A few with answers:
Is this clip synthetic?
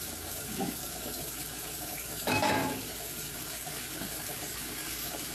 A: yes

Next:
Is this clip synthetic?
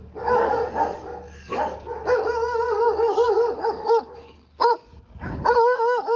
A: yes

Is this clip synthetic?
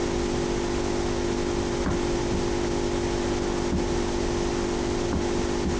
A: no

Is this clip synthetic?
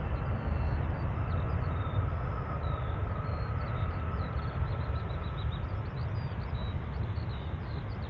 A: no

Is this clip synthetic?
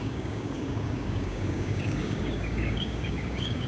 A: yes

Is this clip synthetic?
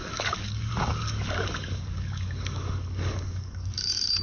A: yes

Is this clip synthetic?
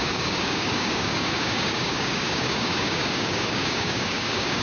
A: yes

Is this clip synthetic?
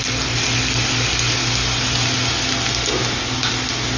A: no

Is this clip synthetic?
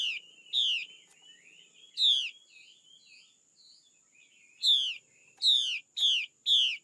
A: no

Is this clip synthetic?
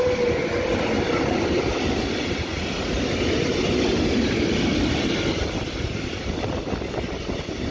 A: no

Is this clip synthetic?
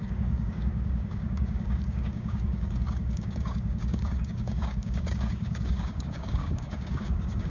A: yes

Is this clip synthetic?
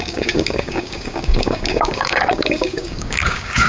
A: yes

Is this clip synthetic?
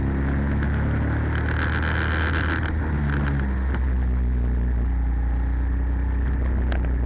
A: no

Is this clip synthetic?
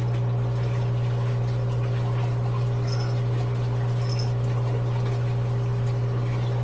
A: no